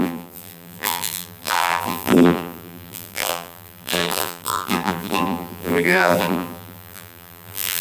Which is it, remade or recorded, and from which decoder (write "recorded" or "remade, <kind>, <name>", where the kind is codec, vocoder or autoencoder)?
remade, vocoder, BigVGAN v2